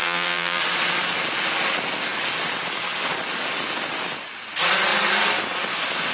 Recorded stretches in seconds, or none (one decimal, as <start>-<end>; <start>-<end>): 0.6-6.1